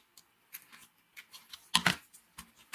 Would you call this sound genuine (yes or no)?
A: yes